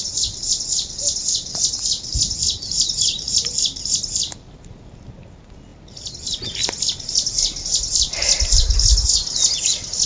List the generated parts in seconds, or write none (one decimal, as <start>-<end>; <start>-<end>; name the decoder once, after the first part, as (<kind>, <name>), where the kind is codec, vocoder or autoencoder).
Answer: none